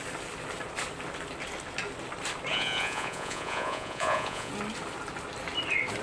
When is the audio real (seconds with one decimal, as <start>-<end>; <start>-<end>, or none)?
0.0-2.5; 4.5-6.0